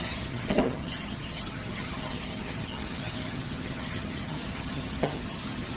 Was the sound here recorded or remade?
remade